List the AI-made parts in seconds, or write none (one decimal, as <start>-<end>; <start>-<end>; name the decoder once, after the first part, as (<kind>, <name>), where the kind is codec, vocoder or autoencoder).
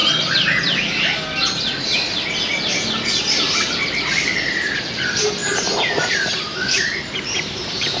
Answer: 3.9-5.4 (vocoder, BigVGAN v2); 6.1-8.0